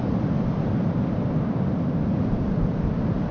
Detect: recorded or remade recorded